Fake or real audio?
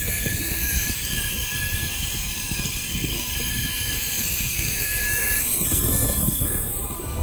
fake